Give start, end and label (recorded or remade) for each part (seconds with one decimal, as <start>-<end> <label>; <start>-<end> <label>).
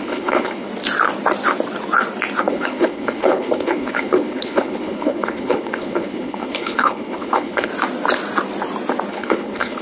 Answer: 0.0-0.7 remade; 0.7-2.4 recorded; 2.4-7.7 remade; 7.7-9.1 recorded; 9.1-9.8 remade